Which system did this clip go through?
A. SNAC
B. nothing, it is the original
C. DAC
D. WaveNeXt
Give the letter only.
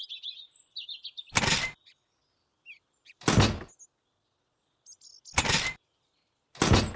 B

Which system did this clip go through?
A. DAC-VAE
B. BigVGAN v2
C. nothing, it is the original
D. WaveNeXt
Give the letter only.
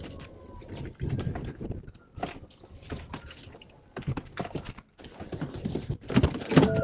C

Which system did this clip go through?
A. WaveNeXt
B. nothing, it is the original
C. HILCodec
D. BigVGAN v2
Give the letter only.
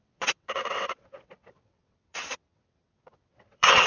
A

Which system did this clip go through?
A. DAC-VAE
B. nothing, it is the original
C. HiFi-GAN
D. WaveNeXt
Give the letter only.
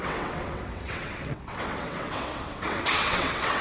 D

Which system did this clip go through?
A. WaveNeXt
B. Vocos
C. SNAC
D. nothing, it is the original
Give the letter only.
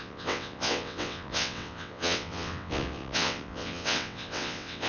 A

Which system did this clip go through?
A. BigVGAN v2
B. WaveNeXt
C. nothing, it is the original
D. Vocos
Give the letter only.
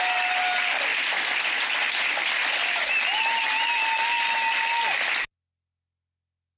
C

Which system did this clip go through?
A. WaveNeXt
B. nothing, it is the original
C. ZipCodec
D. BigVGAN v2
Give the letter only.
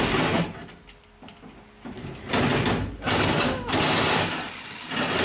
B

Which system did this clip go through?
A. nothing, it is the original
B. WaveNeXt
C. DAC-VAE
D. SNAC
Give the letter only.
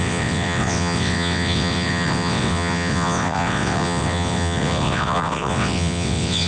B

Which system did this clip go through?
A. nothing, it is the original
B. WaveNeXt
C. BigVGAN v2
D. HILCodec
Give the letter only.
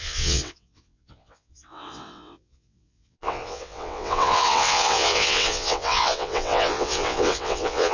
B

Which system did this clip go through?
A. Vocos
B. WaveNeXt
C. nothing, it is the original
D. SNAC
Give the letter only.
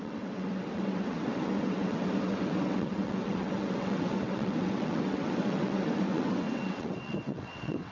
B